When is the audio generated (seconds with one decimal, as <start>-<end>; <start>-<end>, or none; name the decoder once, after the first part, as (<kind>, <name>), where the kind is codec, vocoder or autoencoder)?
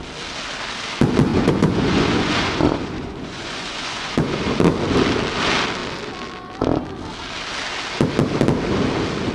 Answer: 1.3-4.4 (vocoder, Vocos)